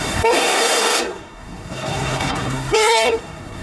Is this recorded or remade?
remade